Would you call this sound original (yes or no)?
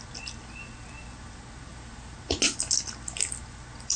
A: yes